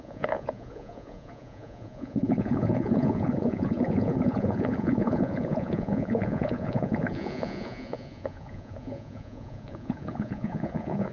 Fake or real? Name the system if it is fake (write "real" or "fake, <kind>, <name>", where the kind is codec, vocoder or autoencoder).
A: fake, vocoder, Vocos